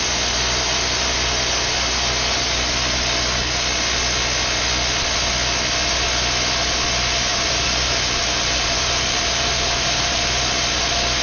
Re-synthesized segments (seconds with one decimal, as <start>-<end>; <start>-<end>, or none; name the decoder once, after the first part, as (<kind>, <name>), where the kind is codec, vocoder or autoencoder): 7.3-10.2 (vocoder, BigVGAN v2)